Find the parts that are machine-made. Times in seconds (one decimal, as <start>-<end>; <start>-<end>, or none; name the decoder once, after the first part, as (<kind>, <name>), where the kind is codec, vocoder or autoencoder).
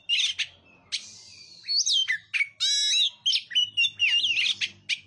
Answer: none